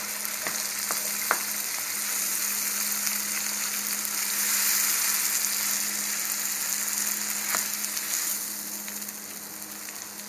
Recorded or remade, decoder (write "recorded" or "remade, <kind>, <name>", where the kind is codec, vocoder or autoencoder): recorded